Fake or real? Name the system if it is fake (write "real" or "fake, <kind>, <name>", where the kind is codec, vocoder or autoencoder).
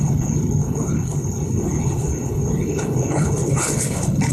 fake, codec, HILCodec